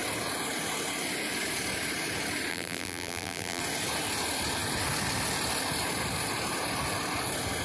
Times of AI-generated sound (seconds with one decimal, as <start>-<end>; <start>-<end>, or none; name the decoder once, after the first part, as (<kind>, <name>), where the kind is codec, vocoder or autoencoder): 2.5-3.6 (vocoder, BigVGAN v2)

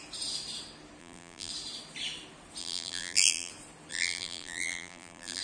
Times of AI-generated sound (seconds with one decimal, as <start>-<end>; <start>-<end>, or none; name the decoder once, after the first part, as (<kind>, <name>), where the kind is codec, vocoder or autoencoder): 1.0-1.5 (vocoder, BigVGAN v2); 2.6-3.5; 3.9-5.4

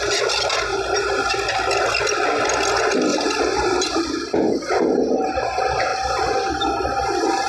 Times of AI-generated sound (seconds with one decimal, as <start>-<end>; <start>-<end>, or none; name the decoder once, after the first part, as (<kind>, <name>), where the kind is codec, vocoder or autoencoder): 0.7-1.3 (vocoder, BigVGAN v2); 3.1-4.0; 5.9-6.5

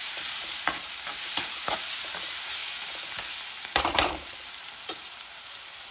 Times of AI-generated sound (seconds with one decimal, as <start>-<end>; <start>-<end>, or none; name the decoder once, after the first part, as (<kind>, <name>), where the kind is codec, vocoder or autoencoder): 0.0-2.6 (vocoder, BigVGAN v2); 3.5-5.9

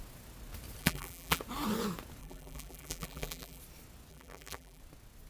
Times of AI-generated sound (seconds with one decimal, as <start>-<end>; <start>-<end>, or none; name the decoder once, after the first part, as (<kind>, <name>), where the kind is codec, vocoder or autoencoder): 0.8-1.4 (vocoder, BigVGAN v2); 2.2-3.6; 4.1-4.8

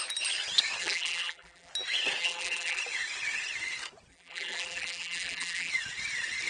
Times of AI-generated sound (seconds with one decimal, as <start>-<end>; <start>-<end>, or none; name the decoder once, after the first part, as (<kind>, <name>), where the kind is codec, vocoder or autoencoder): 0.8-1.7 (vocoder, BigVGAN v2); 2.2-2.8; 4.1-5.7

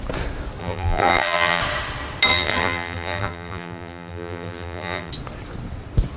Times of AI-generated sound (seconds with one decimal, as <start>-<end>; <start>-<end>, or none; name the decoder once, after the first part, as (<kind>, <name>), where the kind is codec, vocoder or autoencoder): 0.6-1.6 (vocoder, BigVGAN v2); 2.3-5.1